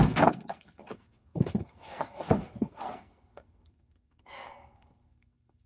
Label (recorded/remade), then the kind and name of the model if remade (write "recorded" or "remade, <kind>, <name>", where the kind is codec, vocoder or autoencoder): remade, codec, SNAC